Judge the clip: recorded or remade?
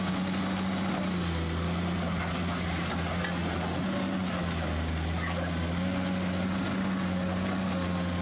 recorded